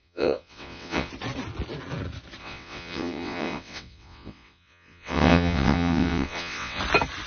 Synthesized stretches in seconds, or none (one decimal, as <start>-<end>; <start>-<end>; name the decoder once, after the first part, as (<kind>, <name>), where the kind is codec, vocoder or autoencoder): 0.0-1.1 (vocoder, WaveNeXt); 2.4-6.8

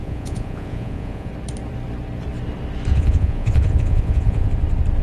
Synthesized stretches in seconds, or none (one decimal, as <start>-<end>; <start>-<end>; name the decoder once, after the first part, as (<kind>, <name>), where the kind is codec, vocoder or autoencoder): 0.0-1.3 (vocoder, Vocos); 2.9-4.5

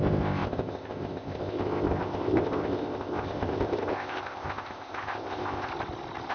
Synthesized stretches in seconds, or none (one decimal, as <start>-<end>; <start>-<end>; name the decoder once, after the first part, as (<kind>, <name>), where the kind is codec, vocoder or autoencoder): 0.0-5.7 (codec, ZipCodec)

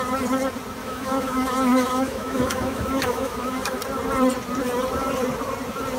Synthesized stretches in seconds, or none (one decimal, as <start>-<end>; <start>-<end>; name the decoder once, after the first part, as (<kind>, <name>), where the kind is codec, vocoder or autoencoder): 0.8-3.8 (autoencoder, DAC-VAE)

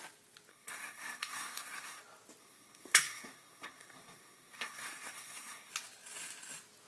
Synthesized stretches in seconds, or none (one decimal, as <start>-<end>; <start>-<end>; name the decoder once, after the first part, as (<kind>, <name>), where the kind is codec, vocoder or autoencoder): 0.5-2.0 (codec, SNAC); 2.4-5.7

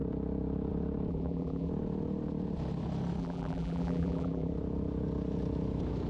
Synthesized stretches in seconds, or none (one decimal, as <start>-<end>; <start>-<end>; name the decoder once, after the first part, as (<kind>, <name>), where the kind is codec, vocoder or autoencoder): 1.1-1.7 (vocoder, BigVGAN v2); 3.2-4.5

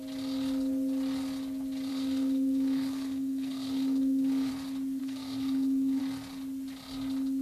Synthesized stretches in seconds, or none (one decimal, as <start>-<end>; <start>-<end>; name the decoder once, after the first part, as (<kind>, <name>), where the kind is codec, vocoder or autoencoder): 1.9-4.5 (codec, SNAC); 5.0-6.0

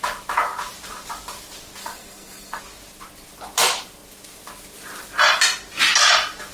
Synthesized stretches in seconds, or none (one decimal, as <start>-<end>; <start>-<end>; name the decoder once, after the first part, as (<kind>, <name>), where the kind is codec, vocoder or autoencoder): 1.8-2.6 (codec, SNAC)